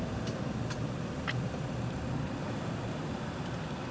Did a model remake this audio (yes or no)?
no